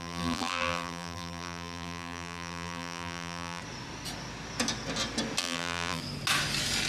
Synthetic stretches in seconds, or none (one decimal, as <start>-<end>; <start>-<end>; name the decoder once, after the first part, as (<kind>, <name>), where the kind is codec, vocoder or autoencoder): 0.0-3.6 (vocoder, BigVGAN v2); 5.4-6.0